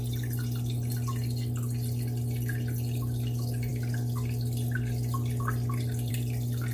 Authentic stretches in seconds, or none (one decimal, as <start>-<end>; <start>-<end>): 0.0-6.7